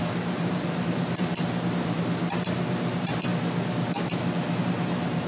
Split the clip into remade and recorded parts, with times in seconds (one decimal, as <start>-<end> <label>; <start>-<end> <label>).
0.0-3.3 remade; 3.3-4.6 recorded; 4.6-5.3 remade

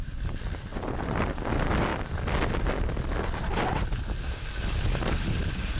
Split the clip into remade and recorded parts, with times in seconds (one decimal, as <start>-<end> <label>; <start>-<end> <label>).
0.0-5.8 recorded

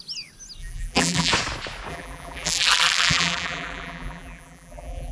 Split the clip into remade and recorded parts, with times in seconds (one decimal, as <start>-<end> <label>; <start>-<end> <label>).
0.0-0.6 recorded; 0.6-1.3 remade; 1.3-1.9 recorded; 1.9-5.1 remade